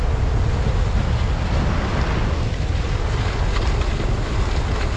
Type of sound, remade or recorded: recorded